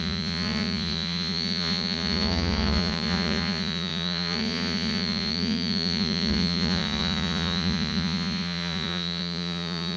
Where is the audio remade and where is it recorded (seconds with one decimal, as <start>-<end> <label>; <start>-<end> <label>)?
0.0-10.0 remade